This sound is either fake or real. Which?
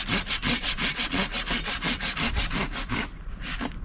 real